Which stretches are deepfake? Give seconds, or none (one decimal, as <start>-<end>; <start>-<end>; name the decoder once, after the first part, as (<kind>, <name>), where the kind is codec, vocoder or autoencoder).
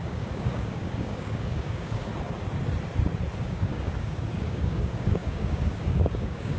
0.0-2.1 (codec, DAC); 3.4-6.6